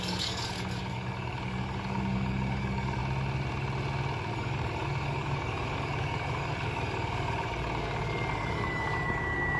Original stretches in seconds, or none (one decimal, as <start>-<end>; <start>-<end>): 3.0-4.3